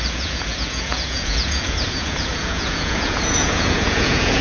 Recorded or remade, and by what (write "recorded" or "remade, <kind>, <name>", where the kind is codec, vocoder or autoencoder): remade, vocoder, Vocos